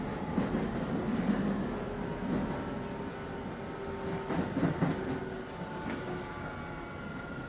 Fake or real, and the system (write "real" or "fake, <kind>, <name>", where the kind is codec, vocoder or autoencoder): real